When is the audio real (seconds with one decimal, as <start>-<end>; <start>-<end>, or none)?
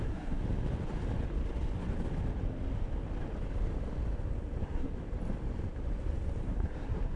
0.4-4.6; 5.0-6.5